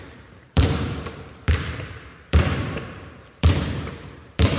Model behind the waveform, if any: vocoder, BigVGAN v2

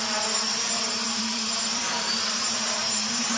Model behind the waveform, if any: vocoder, BigVGAN v2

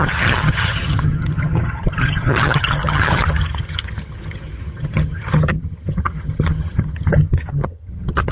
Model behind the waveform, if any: vocoder, HiFi-GAN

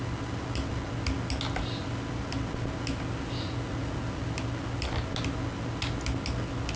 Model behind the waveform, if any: none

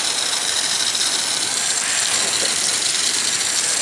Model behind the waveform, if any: none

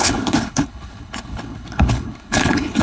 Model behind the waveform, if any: codec, HILCodec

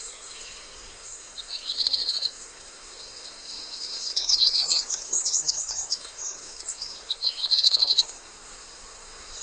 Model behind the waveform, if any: codec, SNAC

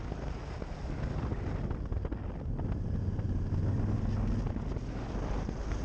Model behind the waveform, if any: none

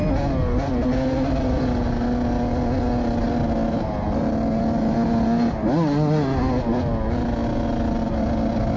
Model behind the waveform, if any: none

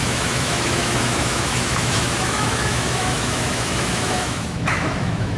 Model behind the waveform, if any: autoencoder, DAC-VAE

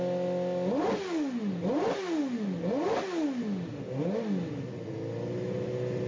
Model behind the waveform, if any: none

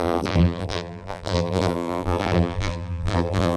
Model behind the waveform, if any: vocoder, BigVGAN v2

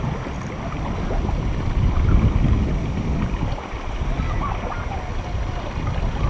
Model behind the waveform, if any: none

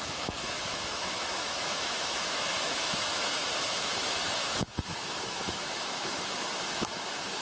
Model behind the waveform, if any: autoencoder, DAC-VAE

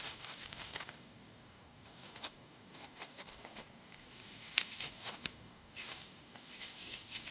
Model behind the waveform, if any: codec, DAC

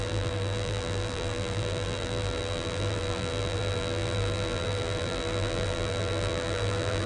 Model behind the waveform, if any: vocoder, BigVGAN v2